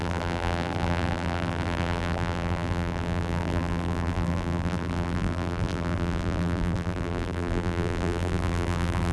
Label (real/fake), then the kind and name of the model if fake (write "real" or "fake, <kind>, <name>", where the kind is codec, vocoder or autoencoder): fake, vocoder, BigVGAN v2